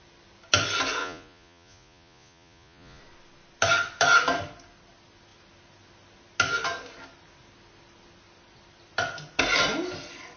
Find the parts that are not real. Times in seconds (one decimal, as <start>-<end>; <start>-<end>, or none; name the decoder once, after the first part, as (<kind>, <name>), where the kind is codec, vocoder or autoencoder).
1.0-3.0 (vocoder, Vocos)